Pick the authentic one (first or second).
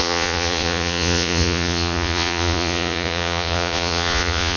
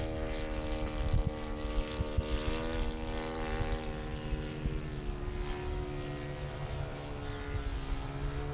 second